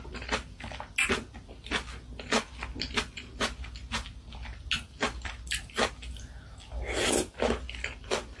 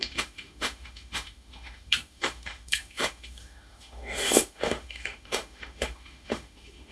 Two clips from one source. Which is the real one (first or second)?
first